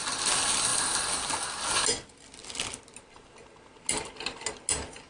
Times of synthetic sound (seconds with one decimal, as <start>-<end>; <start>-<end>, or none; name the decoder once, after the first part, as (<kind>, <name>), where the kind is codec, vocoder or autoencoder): none